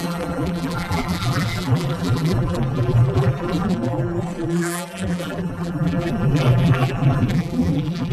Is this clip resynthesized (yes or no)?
yes